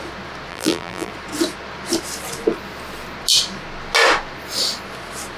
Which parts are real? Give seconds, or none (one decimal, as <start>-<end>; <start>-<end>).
0.0-0.5; 1.1-5.4